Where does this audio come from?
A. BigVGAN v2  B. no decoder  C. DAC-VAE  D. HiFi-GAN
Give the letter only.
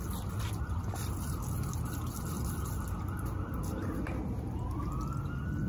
B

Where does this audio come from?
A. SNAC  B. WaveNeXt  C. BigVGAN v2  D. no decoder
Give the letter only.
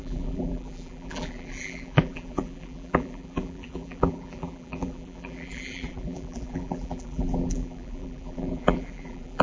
C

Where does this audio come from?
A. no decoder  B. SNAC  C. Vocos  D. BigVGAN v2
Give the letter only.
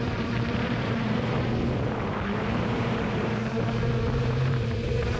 D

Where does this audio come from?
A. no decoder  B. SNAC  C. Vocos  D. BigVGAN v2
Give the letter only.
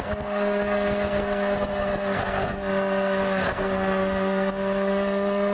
B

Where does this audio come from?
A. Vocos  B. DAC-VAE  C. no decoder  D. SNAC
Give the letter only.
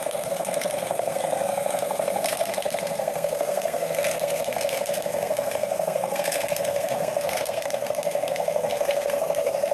D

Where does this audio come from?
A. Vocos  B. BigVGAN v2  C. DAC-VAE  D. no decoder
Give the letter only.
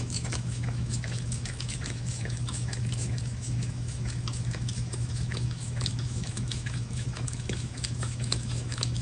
C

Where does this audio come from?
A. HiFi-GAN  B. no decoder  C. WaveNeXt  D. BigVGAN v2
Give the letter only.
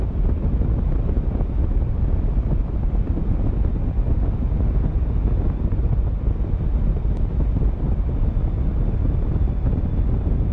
B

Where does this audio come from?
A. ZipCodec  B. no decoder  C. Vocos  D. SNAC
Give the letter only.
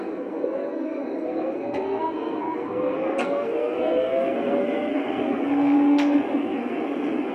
D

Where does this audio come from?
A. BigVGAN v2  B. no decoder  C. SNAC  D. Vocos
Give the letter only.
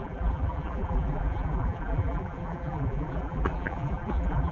A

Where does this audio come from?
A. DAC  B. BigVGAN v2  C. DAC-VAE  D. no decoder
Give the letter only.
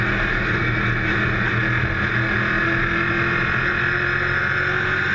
D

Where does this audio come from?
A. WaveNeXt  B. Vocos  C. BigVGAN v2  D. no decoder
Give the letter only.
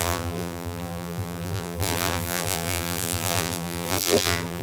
C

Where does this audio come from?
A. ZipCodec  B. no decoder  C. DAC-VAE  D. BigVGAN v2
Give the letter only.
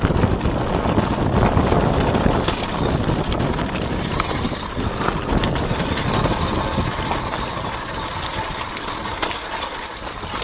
B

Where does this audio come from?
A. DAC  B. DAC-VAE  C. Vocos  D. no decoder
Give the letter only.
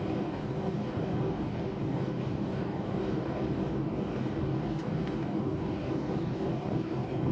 A